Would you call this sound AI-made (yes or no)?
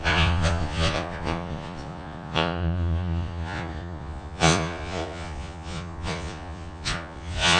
yes